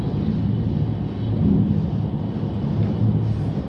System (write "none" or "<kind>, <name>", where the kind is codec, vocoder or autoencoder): none